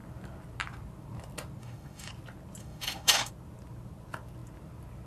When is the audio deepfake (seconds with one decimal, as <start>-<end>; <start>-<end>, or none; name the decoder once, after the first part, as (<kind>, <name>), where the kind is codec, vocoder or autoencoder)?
1.6-2.1 (autoencoder, DAC-VAE); 2.6-3.3